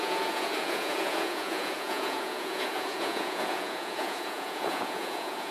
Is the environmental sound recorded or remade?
remade